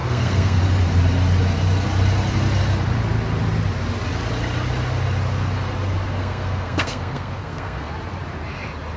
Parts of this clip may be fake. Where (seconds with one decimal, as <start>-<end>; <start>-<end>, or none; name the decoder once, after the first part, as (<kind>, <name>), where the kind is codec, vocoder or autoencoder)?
0.0-0.6 (codec, SNAC); 6.2-7.9